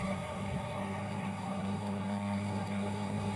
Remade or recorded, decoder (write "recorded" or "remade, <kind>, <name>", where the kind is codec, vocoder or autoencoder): remade, codec, SNAC